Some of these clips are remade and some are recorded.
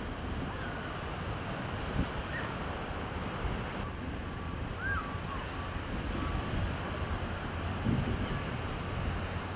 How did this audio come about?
recorded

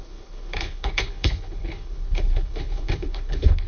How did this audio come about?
remade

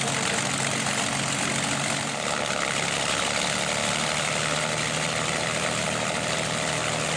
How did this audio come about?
recorded